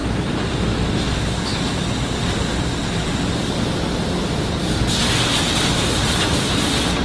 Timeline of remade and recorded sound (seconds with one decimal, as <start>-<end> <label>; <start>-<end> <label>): 0.0-7.0 recorded